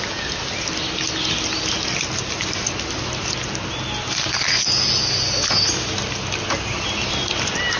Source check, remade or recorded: recorded